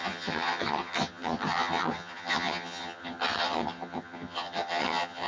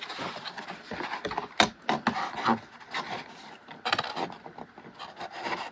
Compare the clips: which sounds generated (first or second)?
first